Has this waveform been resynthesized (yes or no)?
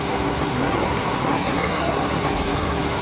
yes